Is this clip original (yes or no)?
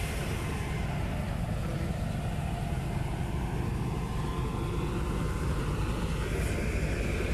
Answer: yes